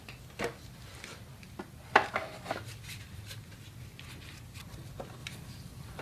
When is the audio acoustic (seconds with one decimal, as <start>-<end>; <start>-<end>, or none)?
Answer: 0.0-1.1; 3.4-5.2